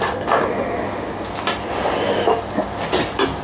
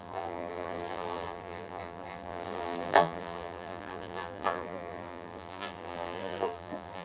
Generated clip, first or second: second